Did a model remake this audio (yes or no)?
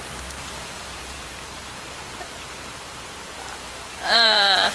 yes